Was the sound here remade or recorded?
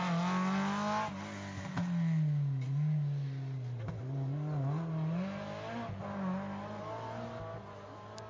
recorded